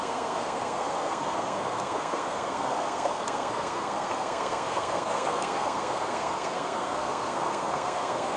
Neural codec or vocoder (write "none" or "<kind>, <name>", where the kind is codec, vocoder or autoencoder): codec, SNAC